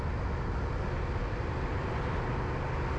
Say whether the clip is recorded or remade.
recorded